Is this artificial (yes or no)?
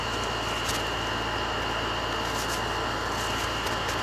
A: no